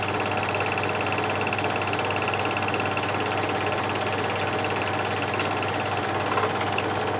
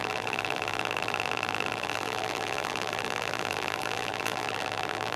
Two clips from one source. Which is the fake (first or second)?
second